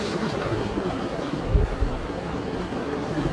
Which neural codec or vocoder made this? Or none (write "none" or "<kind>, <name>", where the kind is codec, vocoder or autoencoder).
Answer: codec, SNAC